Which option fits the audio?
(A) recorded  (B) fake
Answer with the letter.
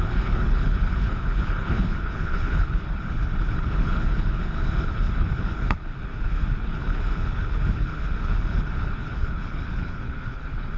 B